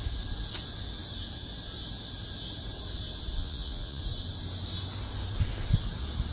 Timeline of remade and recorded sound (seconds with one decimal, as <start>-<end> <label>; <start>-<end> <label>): 0.0-3.4 recorded; 3.4-4.0 remade; 4.0-6.3 recorded

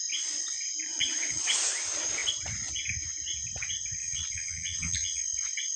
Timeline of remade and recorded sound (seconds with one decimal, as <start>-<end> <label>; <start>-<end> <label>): 0.0-0.9 recorded; 0.9-1.5 remade; 1.5-4.0 recorded; 4.0-5.2 remade; 5.2-5.8 recorded

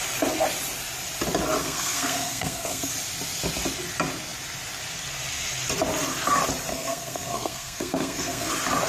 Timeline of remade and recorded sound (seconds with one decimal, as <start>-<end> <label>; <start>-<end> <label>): 0.0-1.6 recorded; 1.6-2.9 remade; 2.9-6.7 recorded; 6.7-8.5 remade; 8.5-8.9 recorded

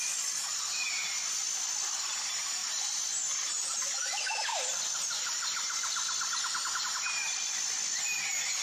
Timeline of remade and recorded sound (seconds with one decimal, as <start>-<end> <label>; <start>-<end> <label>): 0.0-8.6 recorded